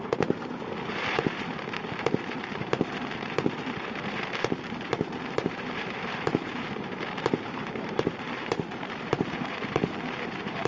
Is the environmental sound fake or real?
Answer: fake